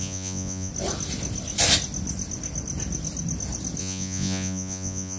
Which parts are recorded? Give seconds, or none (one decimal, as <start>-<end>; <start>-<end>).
0.7-3.8